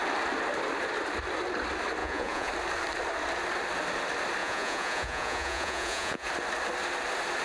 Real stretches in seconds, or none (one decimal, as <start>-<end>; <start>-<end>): 0.0-2.0; 2.5-4.4; 6.3-7.4